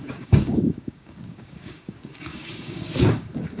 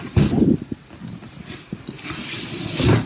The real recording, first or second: second